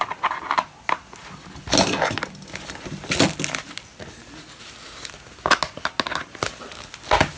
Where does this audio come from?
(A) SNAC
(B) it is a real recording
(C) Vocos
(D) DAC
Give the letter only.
B